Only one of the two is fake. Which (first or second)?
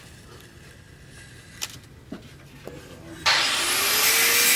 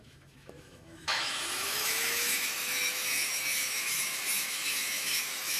second